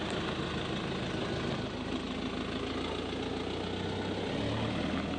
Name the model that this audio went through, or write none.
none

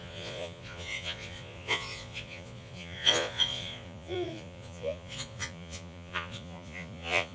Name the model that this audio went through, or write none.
vocoder, Vocos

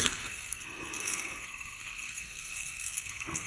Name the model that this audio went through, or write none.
codec, SNAC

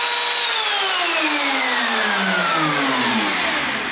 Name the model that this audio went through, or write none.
none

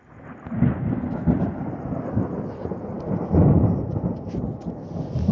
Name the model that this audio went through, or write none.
none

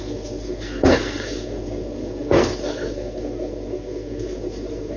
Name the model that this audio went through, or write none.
codec, SNAC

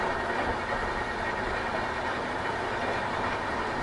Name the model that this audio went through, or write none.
none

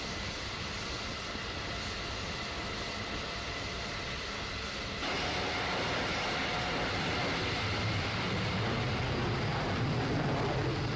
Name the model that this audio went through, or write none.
none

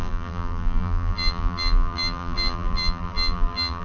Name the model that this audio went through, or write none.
vocoder, BigVGAN v2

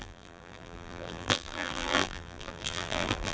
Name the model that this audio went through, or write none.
vocoder, BigVGAN v2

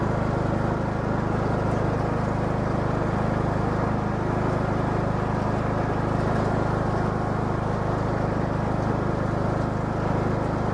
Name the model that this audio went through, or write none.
none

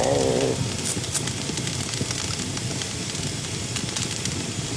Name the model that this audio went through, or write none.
none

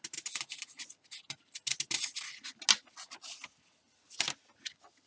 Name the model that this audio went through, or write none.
none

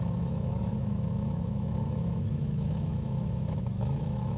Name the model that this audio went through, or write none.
autoencoder, DAC-VAE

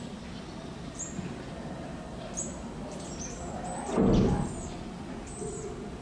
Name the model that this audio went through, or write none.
none